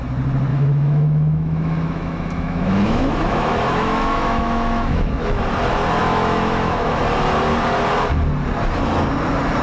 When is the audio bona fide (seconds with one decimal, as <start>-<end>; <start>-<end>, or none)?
0.0-0.5; 5.4-6.0; 7.0-9.6